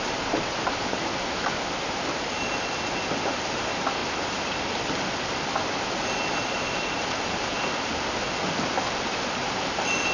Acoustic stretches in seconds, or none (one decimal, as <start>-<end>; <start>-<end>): 0.0-10.1